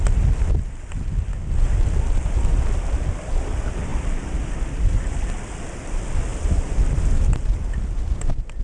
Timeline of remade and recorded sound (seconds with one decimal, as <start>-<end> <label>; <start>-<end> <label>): 0.0-3.9 recorded; 3.9-4.6 remade; 4.6-6.3 recorded; 6.3-8.6 remade

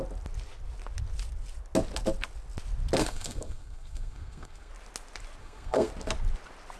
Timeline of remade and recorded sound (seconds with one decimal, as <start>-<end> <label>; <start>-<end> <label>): 0.0-3.0 recorded; 3.0-4.7 remade; 4.7-5.4 recorded; 5.4-5.9 remade; 5.9-6.8 recorded